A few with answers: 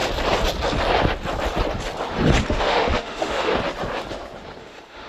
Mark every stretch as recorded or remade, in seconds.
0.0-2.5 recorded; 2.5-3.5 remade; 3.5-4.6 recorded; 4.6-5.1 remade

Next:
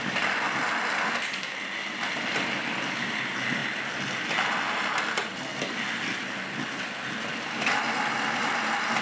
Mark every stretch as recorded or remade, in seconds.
0.0-9.0 recorded

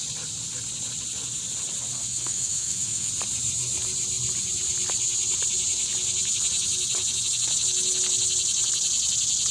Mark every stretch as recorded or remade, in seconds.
0.0-2.0 recorded; 2.0-3.1 remade; 3.1-9.5 recorded

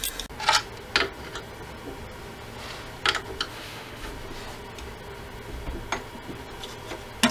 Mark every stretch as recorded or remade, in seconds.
0.0-3.5 recorded; 3.5-4.1 remade; 4.1-7.3 recorded

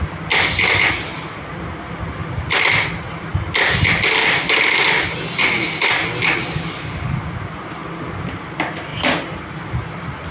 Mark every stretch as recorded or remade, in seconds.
0.0-10.3 recorded

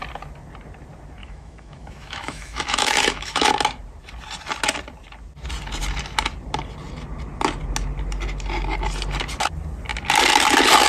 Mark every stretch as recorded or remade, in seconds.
0.0-1.2 recorded; 1.2-3.5 remade; 3.5-10.9 recorded